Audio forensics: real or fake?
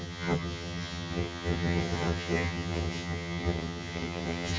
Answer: fake